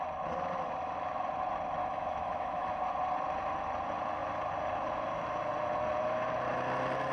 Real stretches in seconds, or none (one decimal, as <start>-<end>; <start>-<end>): 0.0-1.8; 2.8-7.1